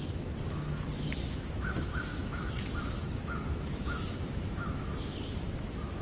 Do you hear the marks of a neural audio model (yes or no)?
yes